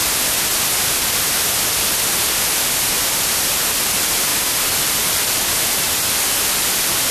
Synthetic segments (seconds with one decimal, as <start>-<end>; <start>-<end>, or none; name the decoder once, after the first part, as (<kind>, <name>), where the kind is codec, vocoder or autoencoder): none

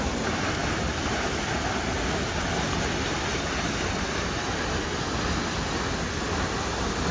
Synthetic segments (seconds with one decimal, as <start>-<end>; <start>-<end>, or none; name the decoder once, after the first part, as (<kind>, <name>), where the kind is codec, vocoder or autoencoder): none

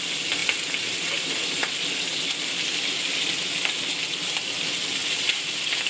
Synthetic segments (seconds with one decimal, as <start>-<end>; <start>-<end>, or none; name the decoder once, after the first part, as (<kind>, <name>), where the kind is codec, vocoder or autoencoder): 5.0-5.5 (vocoder, Vocos)